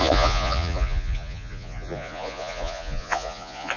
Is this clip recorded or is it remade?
remade